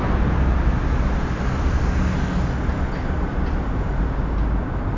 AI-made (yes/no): no